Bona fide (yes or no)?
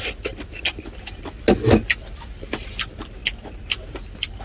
yes